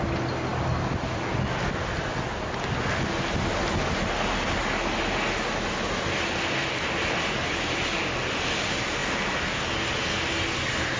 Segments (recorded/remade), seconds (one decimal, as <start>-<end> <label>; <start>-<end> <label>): 0.0-11.0 recorded